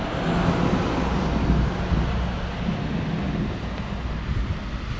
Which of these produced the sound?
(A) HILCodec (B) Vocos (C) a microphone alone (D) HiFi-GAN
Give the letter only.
C